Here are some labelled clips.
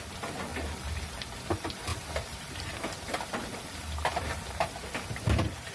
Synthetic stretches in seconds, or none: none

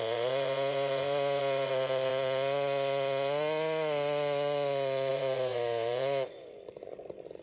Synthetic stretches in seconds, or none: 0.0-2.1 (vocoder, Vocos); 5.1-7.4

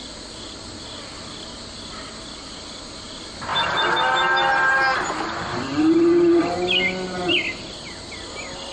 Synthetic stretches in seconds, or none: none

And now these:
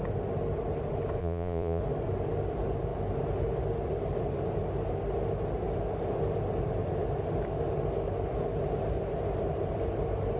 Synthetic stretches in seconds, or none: 1.2-1.8 (vocoder, Vocos)

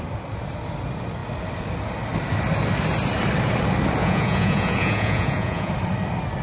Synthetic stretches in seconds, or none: 4.0-5.7 (vocoder, Vocos)

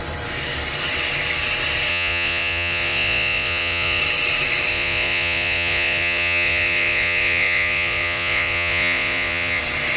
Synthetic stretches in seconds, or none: 1.9-4.0 (vocoder, Vocos); 4.7-9.6

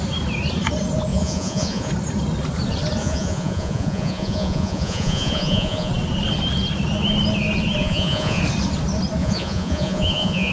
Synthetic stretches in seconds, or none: 1.1-1.9 (vocoder, Vocos); 3.0-5.9; 7.8-8.4; 9.2-10.5

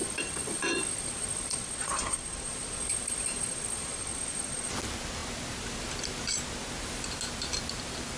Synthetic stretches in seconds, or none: 0.0-4.7 (vocoder, Vocos)